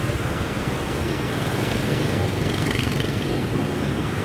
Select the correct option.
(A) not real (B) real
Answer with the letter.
A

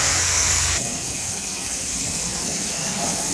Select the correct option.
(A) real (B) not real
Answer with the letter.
B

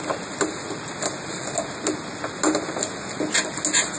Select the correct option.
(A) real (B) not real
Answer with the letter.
A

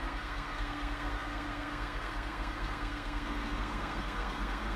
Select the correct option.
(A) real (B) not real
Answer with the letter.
B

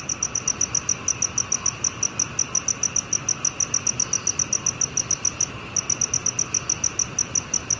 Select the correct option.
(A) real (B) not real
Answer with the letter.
A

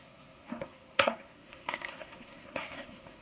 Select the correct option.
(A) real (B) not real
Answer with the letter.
B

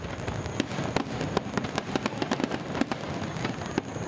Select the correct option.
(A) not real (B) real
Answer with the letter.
B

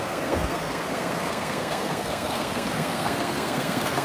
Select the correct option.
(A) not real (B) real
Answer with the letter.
A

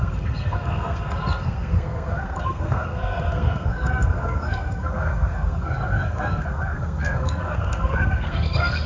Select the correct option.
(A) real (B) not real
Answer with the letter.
B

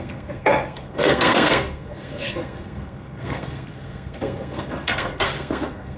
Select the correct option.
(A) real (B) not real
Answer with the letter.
B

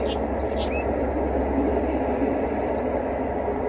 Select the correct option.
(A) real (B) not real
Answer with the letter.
A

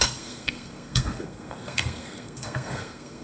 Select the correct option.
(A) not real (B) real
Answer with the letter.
A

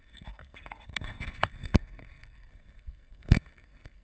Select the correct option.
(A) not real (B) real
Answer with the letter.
A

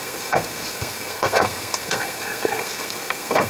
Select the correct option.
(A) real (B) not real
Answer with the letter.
B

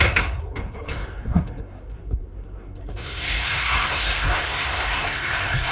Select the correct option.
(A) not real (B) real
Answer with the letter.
A